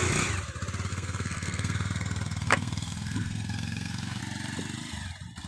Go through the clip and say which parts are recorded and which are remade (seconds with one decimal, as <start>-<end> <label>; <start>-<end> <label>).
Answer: 0.0-0.9 recorded; 0.9-4.2 remade; 4.2-5.5 recorded